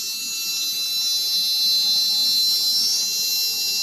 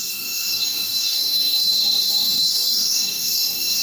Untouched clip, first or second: first